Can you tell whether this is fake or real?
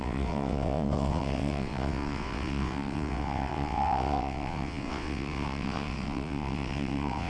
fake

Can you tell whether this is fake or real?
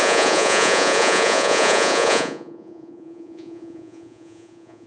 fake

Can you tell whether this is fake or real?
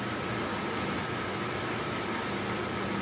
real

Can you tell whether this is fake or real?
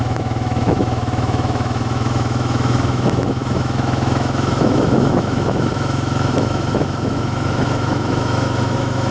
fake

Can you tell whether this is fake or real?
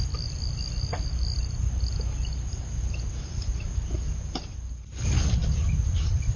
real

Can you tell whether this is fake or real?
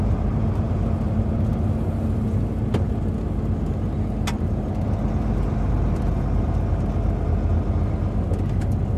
real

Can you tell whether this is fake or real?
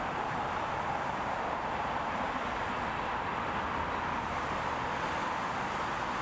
real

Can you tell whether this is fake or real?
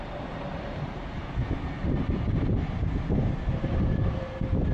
fake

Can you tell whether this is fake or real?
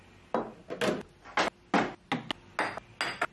real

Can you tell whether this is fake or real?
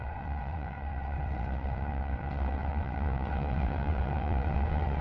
fake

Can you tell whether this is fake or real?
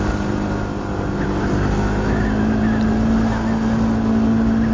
real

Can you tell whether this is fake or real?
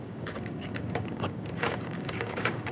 fake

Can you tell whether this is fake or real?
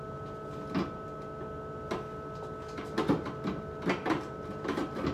real